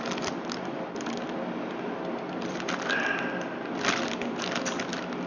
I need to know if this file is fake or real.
real